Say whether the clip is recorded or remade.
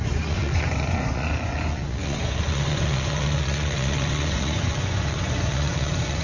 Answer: remade